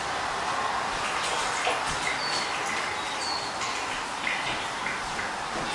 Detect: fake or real real